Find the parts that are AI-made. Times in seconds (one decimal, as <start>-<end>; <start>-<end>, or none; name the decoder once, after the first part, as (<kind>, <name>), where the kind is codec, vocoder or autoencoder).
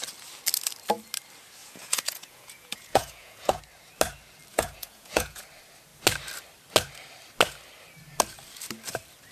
1.6-3.6 (vocoder, Vocos); 4.5-5.4